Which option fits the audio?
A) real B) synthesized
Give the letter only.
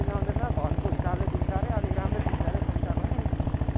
A